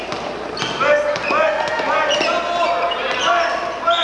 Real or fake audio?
real